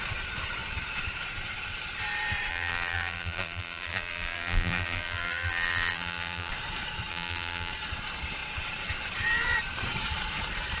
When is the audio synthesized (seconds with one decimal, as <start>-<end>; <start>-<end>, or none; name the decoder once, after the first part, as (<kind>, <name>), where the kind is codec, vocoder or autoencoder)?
2.5-6.5 (vocoder, BigVGAN v2); 7.1-7.7